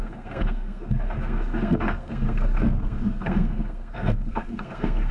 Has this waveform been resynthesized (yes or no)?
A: yes